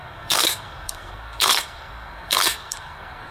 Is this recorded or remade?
remade